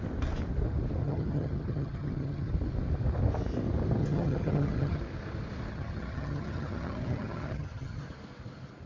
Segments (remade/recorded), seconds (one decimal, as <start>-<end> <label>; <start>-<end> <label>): 0.0-1.0 recorded; 1.0-2.5 remade; 2.5-4.0 recorded; 4.0-5.0 remade; 5.0-5.7 recorded; 5.7-8.0 remade; 8.0-8.9 recorded